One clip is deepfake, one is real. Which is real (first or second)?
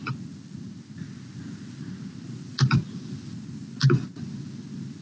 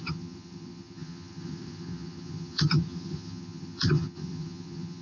first